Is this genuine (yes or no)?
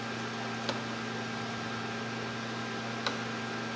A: yes